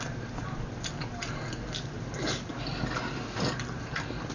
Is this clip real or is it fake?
real